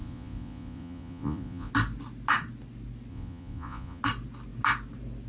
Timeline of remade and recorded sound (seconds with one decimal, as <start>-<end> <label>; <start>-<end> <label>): 0.0-1.7 remade; 1.7-3.1 recorded; 3.1-4.0 remade; 4.0-5.3 recorded